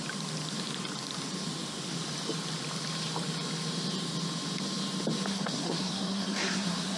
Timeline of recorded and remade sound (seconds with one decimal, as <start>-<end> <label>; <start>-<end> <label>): 0.0-5.3 recorded; 5.3-7.0 remade